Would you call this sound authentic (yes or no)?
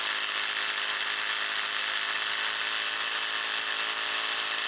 yes